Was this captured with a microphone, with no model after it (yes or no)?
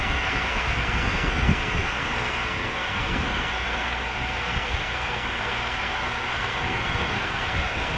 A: no